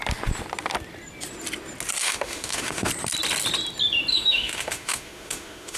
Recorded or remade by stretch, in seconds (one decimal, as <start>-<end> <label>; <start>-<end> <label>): 0.0-2.0 recorded; 2.0-2.9 remade; 2.9-4.1 recorded; 4.1-5.8 remade